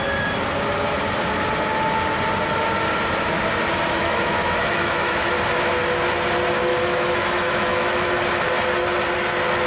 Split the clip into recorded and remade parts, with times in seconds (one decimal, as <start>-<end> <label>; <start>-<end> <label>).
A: 0.0-4.0 recorded; 4.0-5.3 remade; 5.3-6.7 recorded; 6.7-8.2 remade; 8.2-9.7 recorded